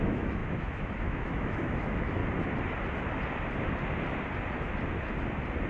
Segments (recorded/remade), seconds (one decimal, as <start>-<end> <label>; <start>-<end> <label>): 0.0-2.2 remade; 2.2-5.7 recorded